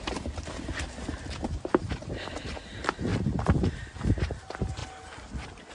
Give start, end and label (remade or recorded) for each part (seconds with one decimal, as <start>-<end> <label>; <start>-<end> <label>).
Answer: 0.0-1.1 recorded; 1.1-1.8 remade; 1.8-3.1 recorded; 3.1-3.8 remade; 3.8-5.7 recorded